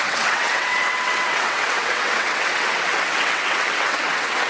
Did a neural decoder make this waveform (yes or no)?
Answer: yes